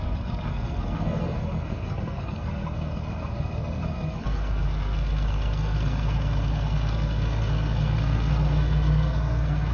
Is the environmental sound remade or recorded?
remade